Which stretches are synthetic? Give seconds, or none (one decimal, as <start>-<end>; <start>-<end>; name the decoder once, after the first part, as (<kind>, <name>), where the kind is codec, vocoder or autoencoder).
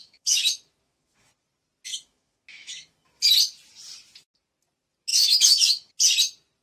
0.0-1.3 (autoencoder, DAC-VAE); 1.9-3.2; 5.1-5.9